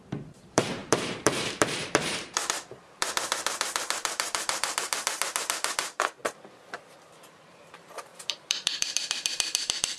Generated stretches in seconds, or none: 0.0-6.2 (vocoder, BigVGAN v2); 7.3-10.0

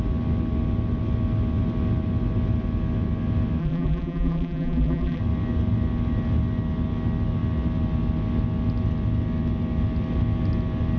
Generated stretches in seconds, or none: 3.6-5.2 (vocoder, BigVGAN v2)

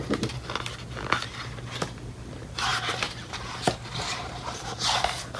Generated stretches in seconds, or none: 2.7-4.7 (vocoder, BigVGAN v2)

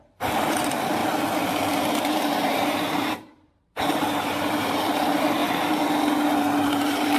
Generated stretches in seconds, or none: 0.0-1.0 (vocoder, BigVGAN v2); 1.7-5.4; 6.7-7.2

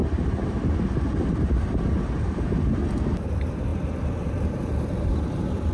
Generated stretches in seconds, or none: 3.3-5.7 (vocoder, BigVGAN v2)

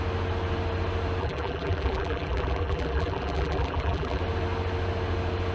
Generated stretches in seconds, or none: 1.2-4.2 (vocoder, BigVGAN v2)